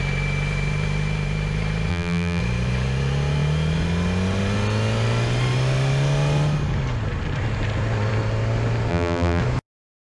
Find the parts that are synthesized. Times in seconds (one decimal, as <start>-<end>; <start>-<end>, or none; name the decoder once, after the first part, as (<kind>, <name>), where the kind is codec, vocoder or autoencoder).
1.9-2.4 (vocoder, BigVGAN v2); 8.9-9.4